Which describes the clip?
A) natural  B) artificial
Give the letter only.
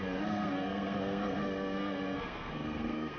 B